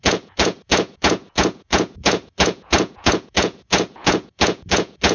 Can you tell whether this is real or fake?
fake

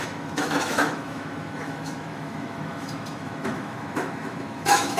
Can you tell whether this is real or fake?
fake